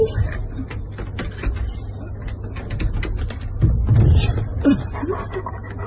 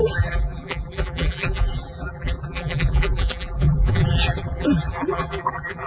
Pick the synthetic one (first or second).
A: second